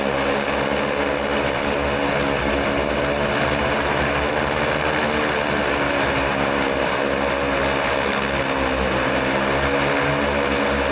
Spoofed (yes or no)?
no